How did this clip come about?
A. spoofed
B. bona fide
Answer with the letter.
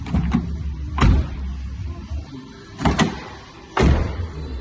B